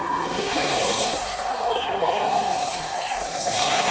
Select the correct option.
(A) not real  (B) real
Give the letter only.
A